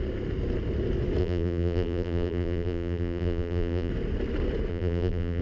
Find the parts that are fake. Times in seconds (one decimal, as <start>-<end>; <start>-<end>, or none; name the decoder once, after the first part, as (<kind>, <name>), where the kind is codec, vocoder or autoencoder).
1.2-3.9 (vocoder, BigVGAN v2); 4.7-5.4